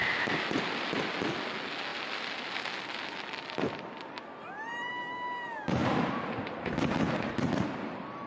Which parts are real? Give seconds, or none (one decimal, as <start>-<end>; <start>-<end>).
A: 0.0-1.9; 4.9-8.3